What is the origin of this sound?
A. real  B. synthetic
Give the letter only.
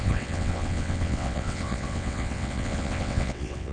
B